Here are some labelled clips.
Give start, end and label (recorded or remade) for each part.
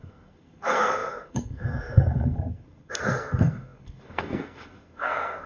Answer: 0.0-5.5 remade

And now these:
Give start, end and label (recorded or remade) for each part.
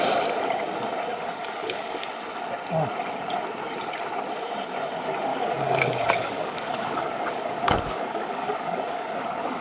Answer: 0.0-1.1 recorded; 1.1-2.1 remade; 2.1-5.3 recorded; 5.3-9.6 remade